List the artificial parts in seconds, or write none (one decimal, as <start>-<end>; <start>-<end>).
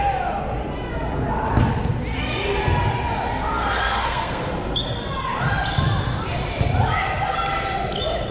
3.5-4.5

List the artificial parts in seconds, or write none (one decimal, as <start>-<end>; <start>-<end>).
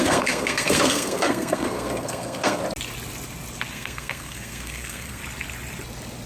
0.0-2.6; 3.7-5.2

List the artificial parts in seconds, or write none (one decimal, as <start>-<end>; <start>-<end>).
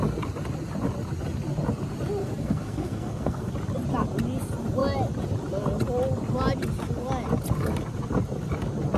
2.2-3.5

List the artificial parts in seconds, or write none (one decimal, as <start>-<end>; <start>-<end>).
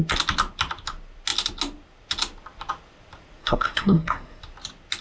3.4-4.4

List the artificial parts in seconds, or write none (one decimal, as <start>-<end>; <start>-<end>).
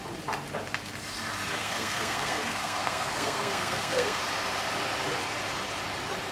1.6-4.2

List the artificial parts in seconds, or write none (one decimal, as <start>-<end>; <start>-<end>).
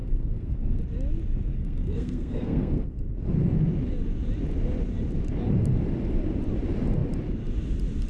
0.0-0.8; 1.5-3.0